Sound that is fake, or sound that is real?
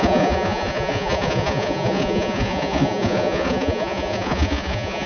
fake